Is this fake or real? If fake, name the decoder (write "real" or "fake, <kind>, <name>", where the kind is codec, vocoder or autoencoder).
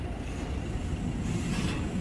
real